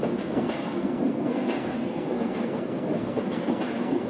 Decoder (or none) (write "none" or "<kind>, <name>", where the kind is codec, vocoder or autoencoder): codec, SNAC